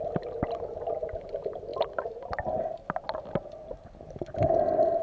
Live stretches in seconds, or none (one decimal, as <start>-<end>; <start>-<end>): 0.0-5.0